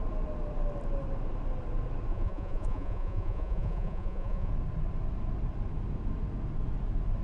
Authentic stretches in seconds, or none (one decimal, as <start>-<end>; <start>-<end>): 0.0-2.1; 4.5-7.2